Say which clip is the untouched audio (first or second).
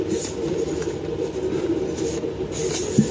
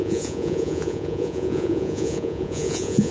first